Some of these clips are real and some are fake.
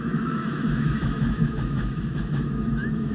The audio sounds fake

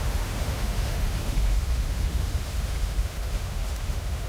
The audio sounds fake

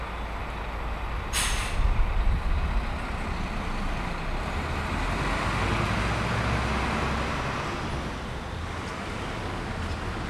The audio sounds real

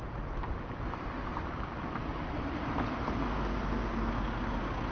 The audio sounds real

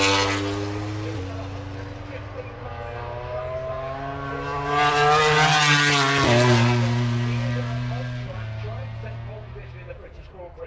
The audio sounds real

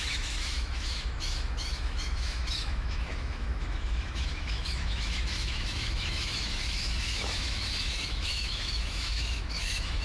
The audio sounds fake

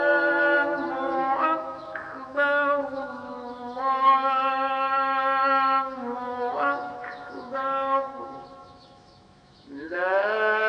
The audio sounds fake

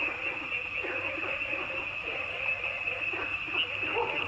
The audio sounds real